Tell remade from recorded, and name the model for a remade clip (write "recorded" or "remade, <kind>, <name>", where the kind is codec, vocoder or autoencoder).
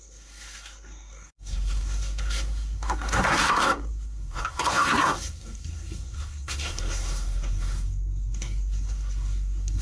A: remade, codec, SNAC